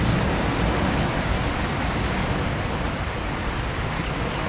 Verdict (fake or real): real